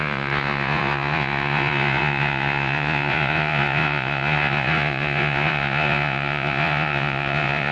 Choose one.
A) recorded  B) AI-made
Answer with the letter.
B